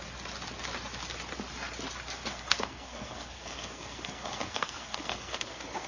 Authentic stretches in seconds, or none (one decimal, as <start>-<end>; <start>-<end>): 0.0-2.3